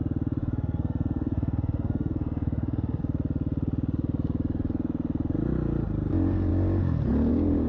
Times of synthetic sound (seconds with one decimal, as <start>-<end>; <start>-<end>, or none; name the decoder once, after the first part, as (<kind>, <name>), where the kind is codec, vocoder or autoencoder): 0.4-3.0 (codec, SNAC)

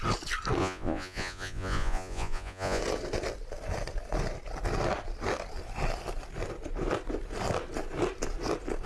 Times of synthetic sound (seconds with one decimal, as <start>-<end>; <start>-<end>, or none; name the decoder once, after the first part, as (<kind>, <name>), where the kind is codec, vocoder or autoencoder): 0.6-2.8 (vocoder, Vocos)

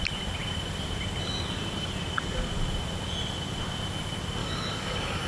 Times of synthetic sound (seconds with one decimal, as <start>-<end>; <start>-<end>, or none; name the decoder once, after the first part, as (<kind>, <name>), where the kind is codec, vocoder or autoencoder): 4.4-5.3 (codec, DAC)

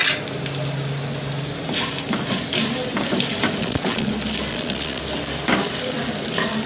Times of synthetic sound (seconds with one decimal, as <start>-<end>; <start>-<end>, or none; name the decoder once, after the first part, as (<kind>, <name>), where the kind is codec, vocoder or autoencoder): 3.6-4.1 (vocoder, Vocos); 4.5-5.0